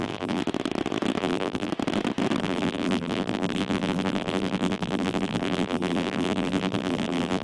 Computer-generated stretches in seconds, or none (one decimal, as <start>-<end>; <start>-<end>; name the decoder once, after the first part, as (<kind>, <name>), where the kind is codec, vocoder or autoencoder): 0.0-0.4 (vocoder, BigVGAN v2); 1.2-1.7; 2.4-7.4